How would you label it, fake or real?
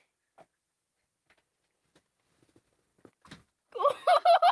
real